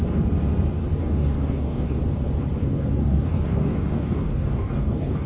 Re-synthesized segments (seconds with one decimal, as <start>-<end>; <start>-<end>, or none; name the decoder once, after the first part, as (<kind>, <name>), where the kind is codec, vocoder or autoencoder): 1.0-2.0 (codec, DAC); 2.6-5.3